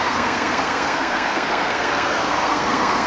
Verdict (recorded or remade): remade